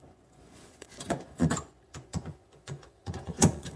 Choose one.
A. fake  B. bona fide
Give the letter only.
A